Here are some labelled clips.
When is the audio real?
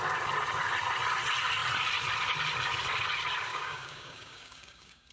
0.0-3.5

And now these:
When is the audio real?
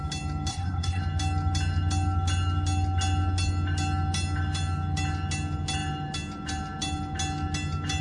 0.0-0.5; 1.0-8.0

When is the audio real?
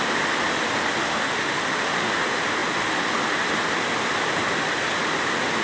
0.0-1.0; 2.1-5.6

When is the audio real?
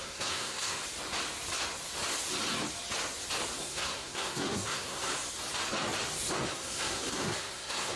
0.8-3.6; 5.1-6.5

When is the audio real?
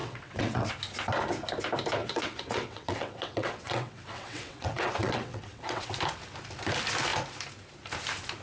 0.7-2.0; 5.9-8.4